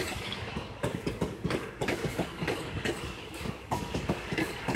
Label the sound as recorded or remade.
remade